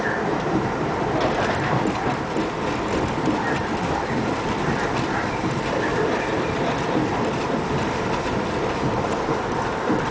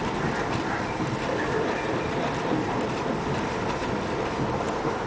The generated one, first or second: first